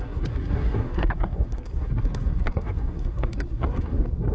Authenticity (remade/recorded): remade